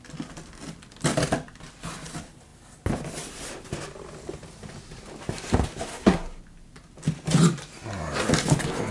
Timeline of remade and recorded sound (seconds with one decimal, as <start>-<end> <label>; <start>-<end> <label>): 0.0-5.9 recorded; 5.9-6.4 remade; 6.4-8.9 recorded